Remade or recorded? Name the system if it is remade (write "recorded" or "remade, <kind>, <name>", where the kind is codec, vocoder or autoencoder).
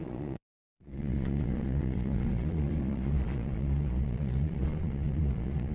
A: remade, vocoder, Vocos